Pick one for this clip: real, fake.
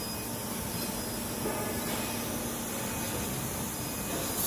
real